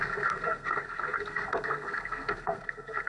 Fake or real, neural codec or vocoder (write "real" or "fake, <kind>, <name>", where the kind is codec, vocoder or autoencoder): fake, codec, SNAC